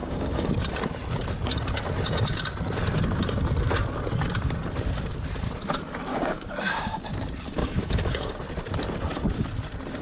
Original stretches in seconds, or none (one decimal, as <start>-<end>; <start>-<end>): 0.5-6.1; 7.0-7.6; 8.4-10.0